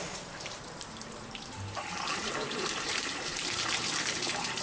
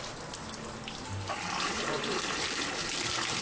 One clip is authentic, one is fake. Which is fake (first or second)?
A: first